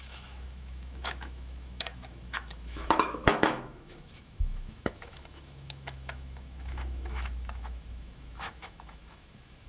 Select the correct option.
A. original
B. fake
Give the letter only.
B